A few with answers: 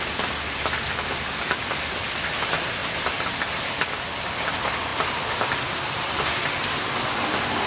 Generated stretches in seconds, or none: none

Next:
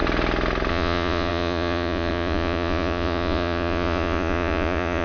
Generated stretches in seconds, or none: 0.7-5.0 (vocoder, Vocos)

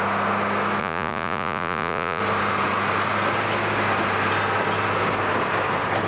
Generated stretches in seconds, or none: 0.8-2.2 (vocoder, Vocos)

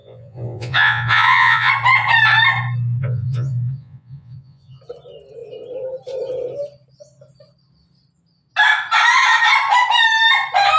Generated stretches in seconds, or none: 0.0-1.7 (vocoder, Vocos); 3.0-4.8

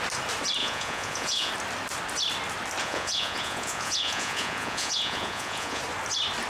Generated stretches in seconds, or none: 0.6-1.5 (vocoder, Vocos); 2.8-5.8

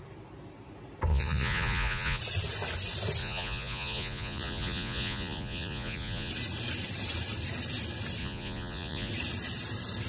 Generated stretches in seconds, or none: 1.1-2.2 (vocoder, Vocos); 3.2-6.3; 8.2-9.1

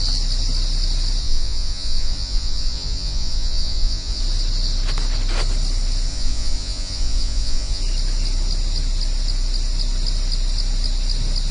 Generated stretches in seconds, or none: 1.2-4.2 (vocoder, Vocos); 6.1-7.8

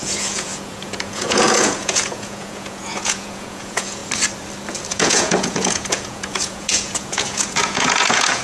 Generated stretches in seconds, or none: 0.0-4.0 (vocoder, Vocos); 4.9-8.4